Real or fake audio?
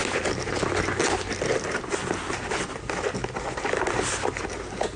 real